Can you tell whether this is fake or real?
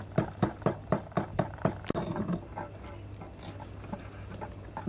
real